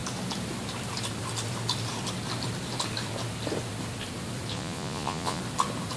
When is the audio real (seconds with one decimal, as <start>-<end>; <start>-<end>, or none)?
0.0-4.5; 5.4-6.0